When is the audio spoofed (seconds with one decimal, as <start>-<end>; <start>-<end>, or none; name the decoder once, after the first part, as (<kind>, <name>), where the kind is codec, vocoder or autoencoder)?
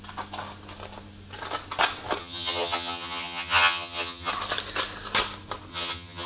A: 2.2-4.3 (vocoder, HiFi-GAN); 5.7-6.3